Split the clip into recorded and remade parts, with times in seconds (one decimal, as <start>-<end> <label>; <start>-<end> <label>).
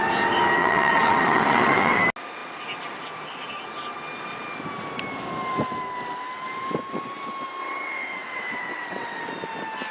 0.0-0.6 recorded; 0.6-2.0 remade; 2.0-7.6 recorded; 7.6-9.3 remade; 9.3-9.9 recorded